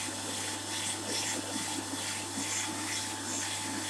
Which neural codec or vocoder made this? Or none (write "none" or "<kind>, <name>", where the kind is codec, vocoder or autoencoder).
none